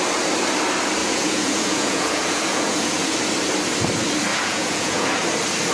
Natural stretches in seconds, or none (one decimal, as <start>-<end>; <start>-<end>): 0.0-1.0; 3.2-4.3; 5.1-5.7